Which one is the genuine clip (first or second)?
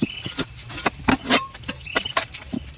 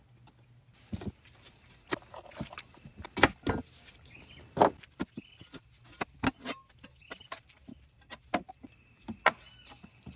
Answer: second